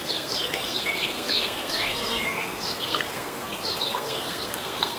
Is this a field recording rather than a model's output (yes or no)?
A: no